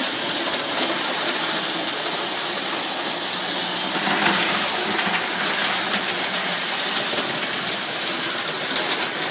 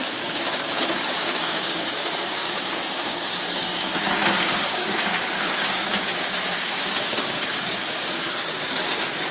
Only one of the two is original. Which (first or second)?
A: first